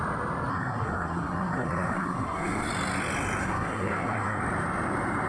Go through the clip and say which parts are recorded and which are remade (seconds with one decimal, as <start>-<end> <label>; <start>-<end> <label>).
0.0-0.5 recorded; 0.5-2.7 remade; 2.7-3.4 recorded; 3.4-4.4 remade; 4.4-5.3 recorded

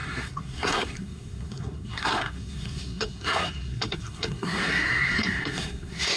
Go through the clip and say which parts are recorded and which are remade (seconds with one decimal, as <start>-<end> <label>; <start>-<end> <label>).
0.0-6.2 remade